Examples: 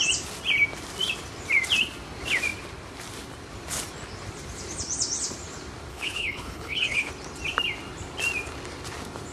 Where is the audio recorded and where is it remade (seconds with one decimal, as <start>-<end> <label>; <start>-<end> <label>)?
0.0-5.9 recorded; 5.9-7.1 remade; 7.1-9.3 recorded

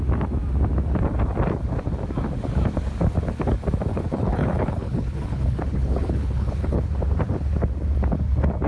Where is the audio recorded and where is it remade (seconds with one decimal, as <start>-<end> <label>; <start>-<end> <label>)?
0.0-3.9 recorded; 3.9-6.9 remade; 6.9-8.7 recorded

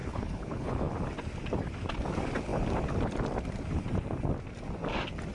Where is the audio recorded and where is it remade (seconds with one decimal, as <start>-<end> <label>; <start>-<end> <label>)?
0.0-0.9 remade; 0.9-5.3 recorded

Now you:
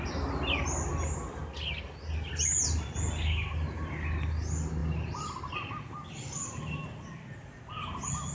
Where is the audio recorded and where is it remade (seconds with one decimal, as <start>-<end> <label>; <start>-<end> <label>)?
0.0-8.3 recorded

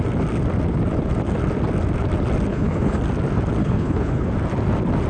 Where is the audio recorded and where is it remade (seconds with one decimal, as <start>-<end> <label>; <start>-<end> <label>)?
0.0-2.5 recorded; 2.5-3.0 remade; 3.0-3.6 recorded; 3.6-4.3 remade; 4.3-5.1 recorded

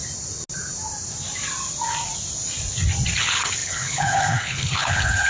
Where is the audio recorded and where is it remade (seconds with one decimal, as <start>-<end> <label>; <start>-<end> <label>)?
0.0-3.2 recorded; 3.2-5.3 remade

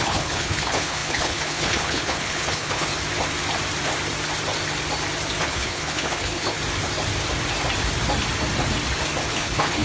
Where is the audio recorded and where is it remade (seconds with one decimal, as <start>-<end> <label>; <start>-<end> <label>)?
0.0-2.9 remade; 2.9-5.4 recorded; 5.4-6.6 remade; 6.6-9.3 recorded; 9.3-9.8 remade

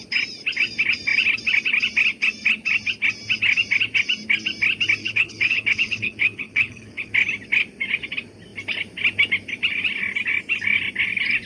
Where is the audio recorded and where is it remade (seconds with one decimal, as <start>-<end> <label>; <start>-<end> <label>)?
0.0-5.0 recorded; 5.0-7.1 remade; 7.1-11.5 recorded